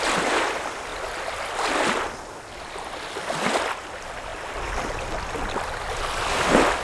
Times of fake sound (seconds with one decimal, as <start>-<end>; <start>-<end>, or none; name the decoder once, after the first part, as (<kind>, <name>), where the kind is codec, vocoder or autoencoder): none